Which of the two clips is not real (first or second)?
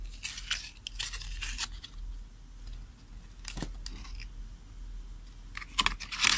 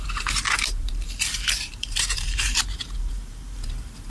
second